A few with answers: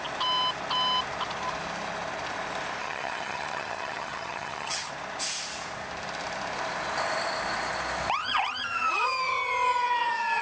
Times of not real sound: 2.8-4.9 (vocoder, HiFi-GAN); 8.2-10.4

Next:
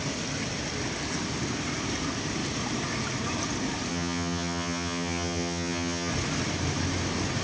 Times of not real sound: 3.9-6.1 (vocoder, HiFi-GAN)

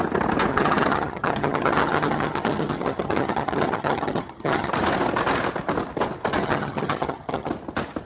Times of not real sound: 0.5-4.7 (vocoder, HiFi-GAN); 6.4-7.5

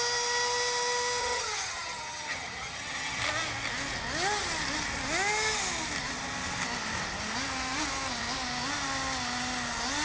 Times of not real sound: 1.2-3.2 (vocoder, HiFi-GAN)

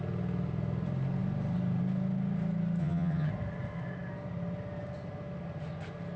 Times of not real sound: 2.8-3.3 (vocoder, HiFi-GAN)